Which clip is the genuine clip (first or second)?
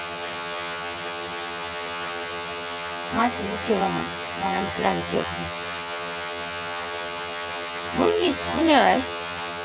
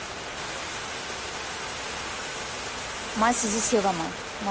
second